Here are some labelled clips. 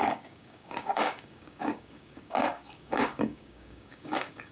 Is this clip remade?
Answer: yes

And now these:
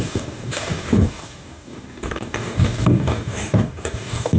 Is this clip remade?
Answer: yes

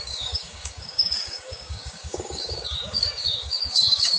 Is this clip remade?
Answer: yes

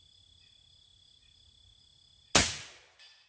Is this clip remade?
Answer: no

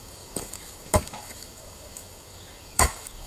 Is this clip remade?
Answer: yes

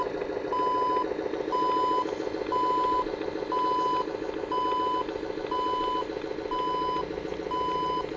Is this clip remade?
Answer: no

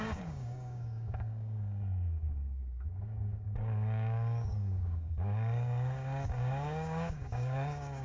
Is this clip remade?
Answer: yes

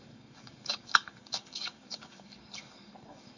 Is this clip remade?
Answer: yes